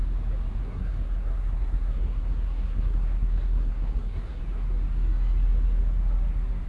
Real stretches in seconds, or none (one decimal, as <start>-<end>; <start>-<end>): 0.0-0.6; 4.4-6.7